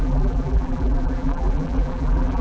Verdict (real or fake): fake